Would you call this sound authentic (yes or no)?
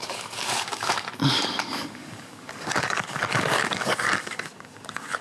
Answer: no